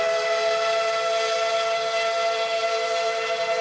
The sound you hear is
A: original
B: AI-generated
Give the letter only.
A